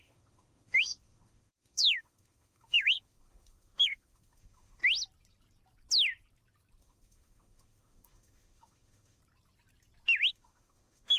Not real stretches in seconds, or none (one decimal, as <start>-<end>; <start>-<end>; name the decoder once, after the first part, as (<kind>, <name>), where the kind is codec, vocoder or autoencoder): 0.0-4.8 (autoencoder, DAC-VAE); 6.8-9.2; 10.3-11.2